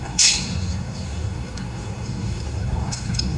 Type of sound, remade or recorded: remade